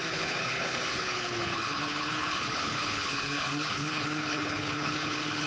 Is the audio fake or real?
fake